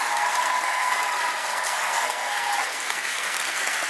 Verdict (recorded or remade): remade